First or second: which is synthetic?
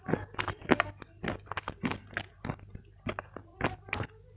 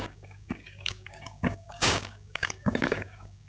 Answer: second